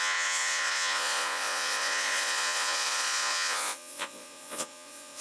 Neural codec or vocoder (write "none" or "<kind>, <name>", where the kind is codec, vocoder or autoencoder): vocoder, Vocos